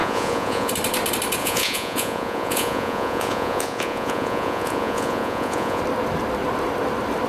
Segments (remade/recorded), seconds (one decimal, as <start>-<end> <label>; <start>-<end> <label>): 0.0-0.7 remade; 0.7-1.4 recorded; 1.4-5.8 remade; 5.8-7.3 recorded